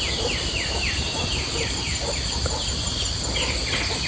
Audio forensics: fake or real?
real